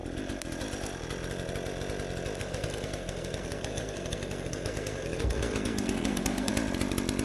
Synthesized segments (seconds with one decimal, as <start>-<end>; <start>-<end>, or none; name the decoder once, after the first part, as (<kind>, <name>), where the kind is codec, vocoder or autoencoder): 2.4-6.5 (codec, SNAC)